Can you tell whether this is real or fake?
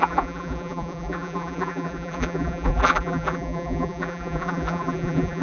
fake